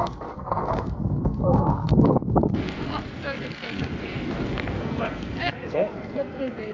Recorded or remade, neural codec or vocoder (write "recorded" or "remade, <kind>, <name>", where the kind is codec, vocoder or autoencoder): remade, codec, SNAC